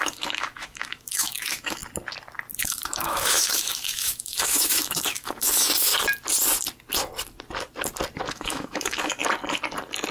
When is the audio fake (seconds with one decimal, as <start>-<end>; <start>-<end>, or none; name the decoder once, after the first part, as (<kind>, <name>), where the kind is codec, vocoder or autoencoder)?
0.0-1.8 (autoencoder, DAC-VAE); 2.6-5.9; 8.3-9.2